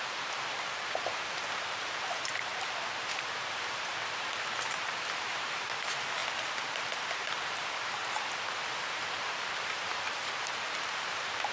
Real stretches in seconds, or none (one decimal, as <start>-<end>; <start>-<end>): 6.2-7.4; 8.0-8.8